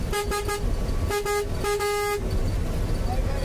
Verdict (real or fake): real